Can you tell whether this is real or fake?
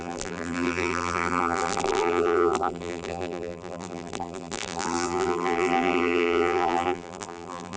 fake